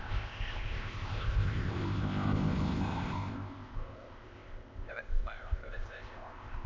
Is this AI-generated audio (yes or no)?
yes